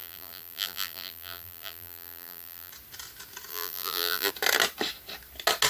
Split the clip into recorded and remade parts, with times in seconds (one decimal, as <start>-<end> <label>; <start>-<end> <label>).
0.0-2.7 remade; 2.7-3.5 recorded; 3.5-4.3 remade; 4.3-5.7 recorded